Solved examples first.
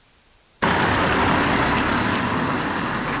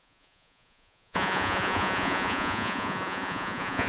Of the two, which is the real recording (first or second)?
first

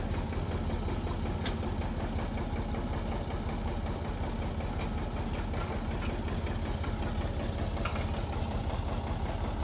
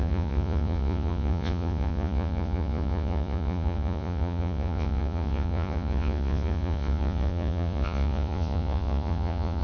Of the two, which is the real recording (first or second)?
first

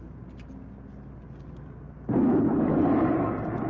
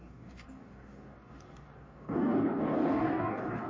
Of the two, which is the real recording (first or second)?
first